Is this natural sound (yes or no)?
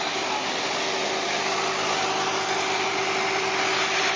yes